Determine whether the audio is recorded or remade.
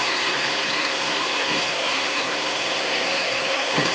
remade